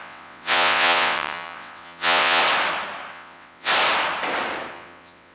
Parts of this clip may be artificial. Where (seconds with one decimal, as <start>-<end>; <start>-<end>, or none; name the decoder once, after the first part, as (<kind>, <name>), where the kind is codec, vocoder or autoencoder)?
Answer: 0.0-2.4 (vocoder, WaveNeXt); 3.1-3.7; 4.7-5.3